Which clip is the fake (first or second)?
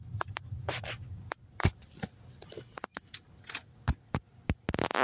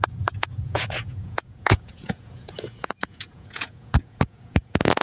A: second